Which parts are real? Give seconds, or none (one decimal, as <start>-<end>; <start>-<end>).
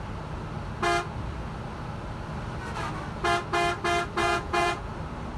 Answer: 0.0-4.2; 4.9-5.4